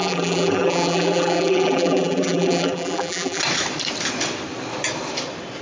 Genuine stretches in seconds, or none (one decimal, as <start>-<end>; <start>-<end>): 3.4-5.6